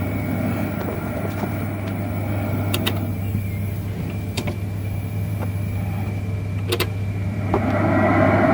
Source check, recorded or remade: remade